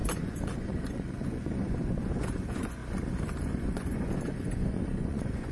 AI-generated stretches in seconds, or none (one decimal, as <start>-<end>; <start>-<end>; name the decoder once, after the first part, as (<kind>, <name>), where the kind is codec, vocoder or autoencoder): 0.0-2.8 (vocoder, Vocos); 3.4-5.5

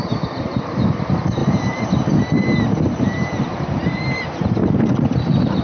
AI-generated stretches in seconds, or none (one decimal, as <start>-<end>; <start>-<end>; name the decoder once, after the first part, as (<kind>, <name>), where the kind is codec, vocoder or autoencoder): 1.4-4.8 (vocoder, BigVGAN v2)

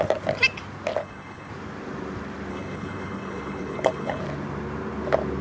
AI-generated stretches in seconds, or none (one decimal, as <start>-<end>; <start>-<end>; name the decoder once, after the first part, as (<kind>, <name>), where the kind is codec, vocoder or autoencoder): 1.0-1.5 (codec, HILCodec); 2.5-4.2

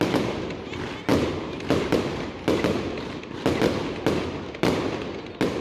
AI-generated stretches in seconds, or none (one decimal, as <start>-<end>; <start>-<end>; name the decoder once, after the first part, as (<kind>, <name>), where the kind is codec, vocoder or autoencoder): none

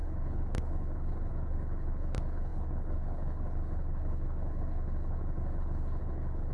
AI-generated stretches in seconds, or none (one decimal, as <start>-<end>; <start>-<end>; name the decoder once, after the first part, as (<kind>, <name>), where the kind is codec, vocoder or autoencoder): 0.0-6.5 (codec, HILCodec)

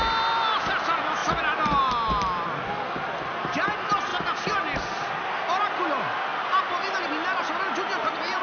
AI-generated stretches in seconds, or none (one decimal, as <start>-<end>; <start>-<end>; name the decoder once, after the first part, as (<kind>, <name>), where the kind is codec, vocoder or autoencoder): none

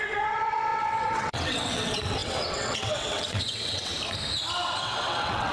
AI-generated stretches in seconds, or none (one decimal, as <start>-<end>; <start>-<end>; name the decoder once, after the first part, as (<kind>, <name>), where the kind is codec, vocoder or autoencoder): 0.0-3.9 (vocoder, WaveNeXt); 4.8-5.5